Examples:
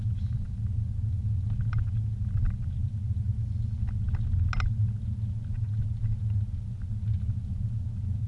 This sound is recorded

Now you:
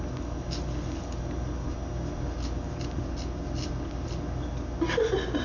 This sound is recorded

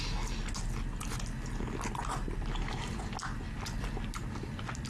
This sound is recorded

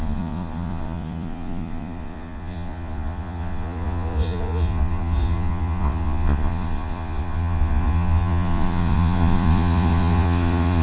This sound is remade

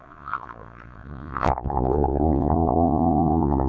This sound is remade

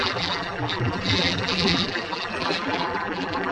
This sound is remade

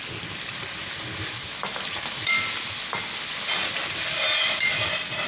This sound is recorded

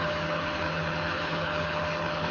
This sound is remade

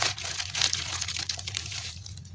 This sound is remade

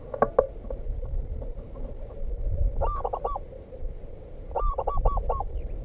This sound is recorded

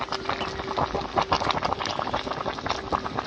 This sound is recorded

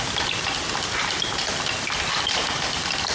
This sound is recorded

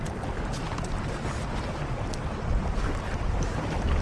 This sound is recorded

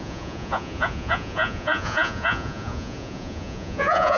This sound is remade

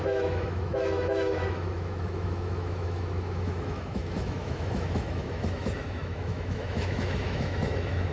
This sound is remade